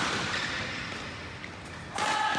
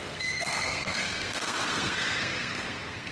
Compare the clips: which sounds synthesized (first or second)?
second